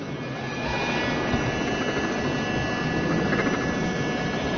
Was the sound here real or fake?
real